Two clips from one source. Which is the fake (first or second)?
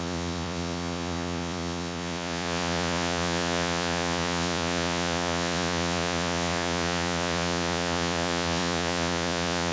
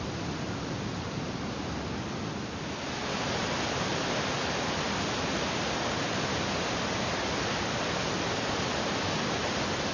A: first